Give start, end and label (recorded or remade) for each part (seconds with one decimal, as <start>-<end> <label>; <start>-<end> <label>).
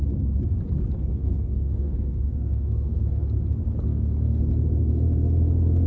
0.0-1.1 recorded; 1.1-3.2 remade; 3.2-3.9 recorded; 3.9-4.4 remade; 4.4-5.9 recorded